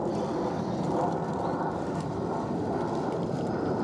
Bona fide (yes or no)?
yes